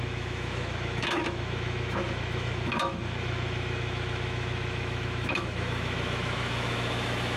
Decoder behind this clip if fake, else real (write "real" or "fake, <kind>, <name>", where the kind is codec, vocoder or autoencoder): fake, autoencoder, DAC-VAE